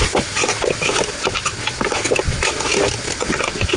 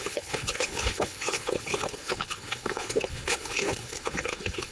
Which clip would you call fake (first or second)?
second